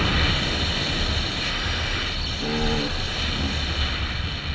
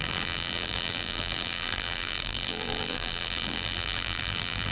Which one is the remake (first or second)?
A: second